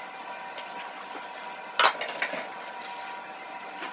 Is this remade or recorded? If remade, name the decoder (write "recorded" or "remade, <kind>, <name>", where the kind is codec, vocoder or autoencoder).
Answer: recorded